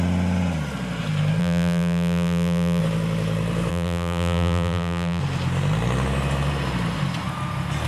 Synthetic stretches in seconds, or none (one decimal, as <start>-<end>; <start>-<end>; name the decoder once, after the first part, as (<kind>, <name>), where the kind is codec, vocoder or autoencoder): 1.4-2.8 (vocoder, BigVGAN v2); 3.7-5.2